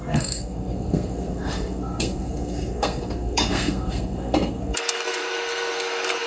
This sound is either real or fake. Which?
fake